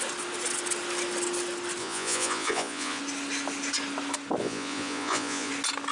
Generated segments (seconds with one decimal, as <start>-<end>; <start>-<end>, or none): 1.8-3.0; 4.4-5.5